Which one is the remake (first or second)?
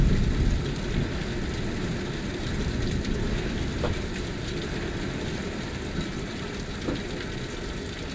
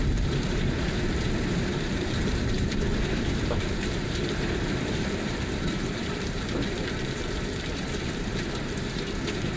second